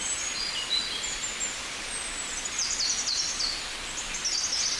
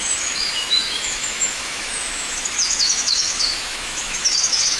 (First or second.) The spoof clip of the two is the second